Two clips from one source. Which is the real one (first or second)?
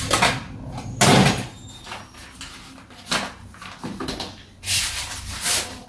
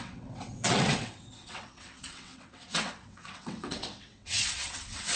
first